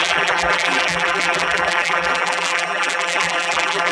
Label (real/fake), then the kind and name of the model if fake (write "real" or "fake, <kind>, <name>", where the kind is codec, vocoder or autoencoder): fake, vocoder, BigVGAN v2